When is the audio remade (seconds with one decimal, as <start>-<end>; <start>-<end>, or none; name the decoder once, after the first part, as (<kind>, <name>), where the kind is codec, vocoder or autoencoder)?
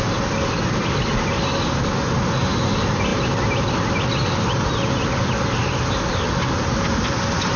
none